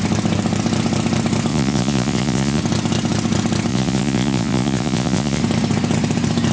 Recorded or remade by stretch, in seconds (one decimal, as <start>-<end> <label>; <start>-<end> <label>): 0.0-1.5 recorded; 1.5-2.6 remade; 2.6-3.7 recorded; 3.7-5.4 remade; 5.4-6.5 recorded